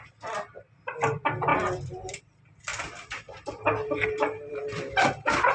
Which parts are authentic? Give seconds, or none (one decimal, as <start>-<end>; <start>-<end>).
0.0-1.5; 2.2-5.5